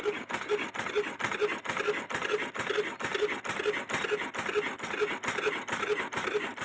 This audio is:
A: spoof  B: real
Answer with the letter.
B